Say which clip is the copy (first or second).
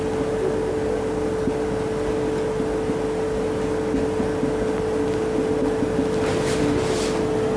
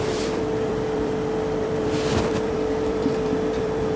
second